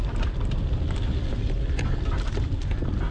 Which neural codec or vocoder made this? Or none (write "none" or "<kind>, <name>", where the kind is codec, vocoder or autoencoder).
none